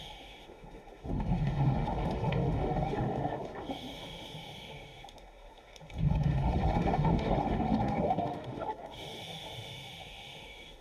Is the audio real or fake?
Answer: fake